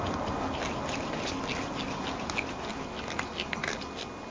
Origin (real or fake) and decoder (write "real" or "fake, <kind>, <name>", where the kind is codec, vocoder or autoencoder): real